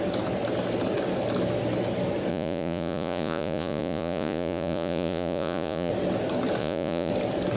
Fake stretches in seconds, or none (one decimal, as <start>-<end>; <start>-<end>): 2.3-5.9; 6.6-7.1